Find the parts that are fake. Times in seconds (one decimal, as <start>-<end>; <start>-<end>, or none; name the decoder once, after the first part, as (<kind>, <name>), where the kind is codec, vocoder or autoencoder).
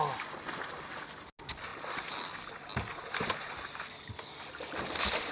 none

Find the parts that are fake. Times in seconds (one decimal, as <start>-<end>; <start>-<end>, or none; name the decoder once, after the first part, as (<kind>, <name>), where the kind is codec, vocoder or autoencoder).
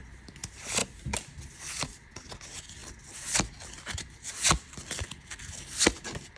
none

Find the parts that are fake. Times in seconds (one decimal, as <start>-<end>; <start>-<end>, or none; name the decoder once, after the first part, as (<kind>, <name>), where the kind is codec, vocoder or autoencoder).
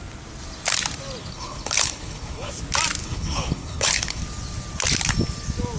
1.2-2.5 (codec, HILCodec); 3.0-4.2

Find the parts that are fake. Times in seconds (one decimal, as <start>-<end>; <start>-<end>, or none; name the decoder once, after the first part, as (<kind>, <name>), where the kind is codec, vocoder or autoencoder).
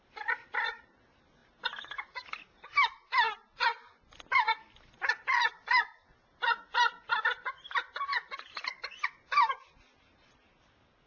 none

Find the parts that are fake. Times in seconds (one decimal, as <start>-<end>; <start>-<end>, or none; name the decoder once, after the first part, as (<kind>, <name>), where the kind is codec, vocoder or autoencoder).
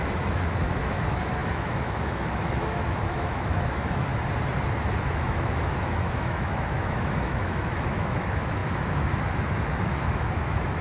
0.0-4.1 (autoencoder, DAC-VAE); 5.1-10.8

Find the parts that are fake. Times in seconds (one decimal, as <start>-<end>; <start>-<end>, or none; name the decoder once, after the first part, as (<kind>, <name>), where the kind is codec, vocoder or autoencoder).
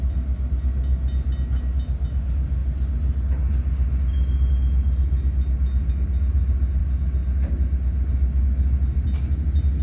none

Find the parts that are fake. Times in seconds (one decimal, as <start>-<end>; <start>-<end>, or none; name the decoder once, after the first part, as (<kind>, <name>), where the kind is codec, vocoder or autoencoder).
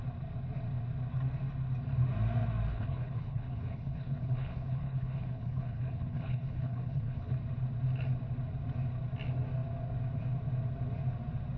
2.7-7.4 (codec, HILCodec)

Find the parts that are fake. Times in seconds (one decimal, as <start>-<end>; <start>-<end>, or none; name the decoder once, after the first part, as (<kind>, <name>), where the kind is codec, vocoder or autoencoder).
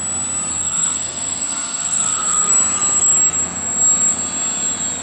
0.5-2.5 (codec, SNAC)